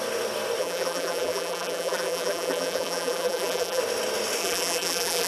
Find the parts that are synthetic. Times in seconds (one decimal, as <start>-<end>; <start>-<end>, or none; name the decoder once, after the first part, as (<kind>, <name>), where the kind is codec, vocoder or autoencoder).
0.6-3.8 (vocoder, BigVGAN v2); 4.4-5.3